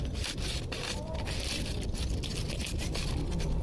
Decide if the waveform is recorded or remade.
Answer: remade